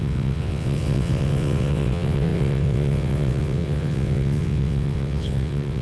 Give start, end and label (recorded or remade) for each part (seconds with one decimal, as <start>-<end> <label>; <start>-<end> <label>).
0.0-5.8 remade